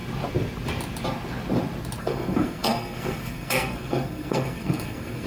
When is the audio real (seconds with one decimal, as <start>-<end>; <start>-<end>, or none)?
0.0-2.0